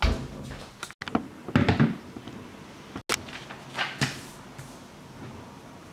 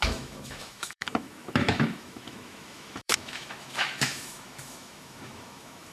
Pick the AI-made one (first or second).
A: second